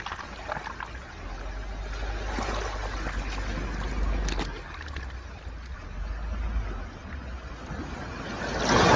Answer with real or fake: real